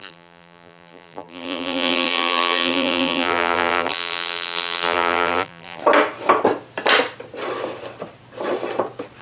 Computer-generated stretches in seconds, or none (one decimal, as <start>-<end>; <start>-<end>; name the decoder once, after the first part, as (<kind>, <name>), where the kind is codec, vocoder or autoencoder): 0.0-5.8 (vocoder, BigVGAN v2)